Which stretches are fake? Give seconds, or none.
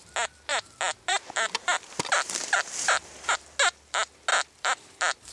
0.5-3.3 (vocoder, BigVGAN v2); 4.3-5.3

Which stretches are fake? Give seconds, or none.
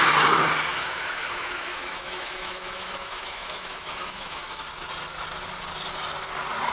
0.7-4.6 (autoencoder, DAC-VAE)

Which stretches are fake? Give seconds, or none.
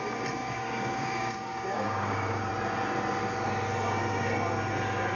0.4-2.5 (codec, DAC)